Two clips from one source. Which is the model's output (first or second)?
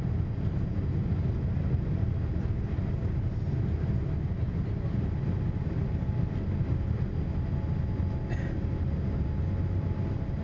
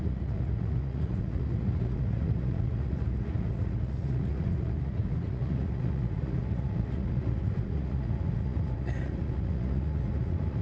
second